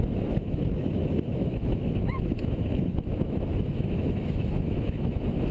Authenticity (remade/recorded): remade